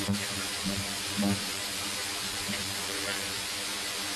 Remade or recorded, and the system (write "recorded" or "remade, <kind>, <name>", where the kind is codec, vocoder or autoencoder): remade, vocoder, Vocos